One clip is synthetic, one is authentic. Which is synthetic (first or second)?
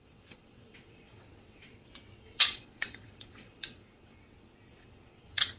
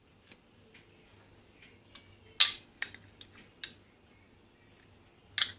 first